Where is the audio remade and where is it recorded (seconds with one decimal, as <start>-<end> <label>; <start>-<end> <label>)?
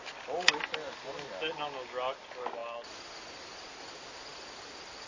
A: 0.0-5.1 recorded